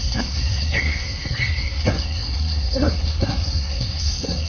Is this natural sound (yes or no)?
no